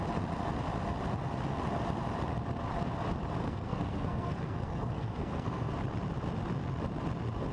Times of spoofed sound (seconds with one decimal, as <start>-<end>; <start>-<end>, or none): 3.4-5.7